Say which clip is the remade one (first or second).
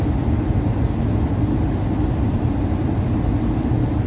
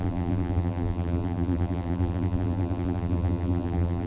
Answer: second